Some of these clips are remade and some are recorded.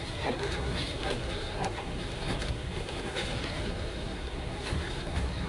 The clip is remade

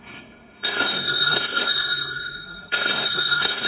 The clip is remade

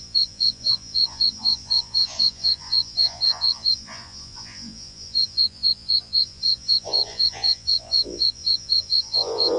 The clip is remade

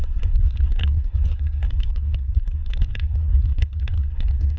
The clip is remade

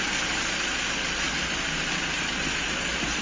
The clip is recorded